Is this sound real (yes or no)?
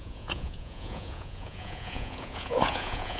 no